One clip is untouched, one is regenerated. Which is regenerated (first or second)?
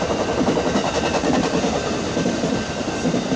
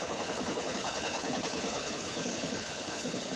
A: second